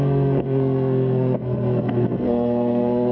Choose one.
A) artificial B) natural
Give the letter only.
A